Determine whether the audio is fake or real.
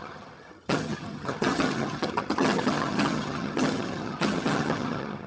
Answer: fake